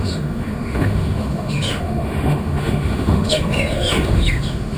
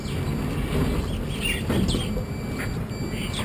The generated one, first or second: first